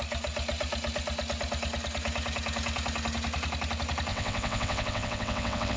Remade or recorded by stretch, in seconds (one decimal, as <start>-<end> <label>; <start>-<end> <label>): 0.0-4.1 recorded; 4.1-5.8 remade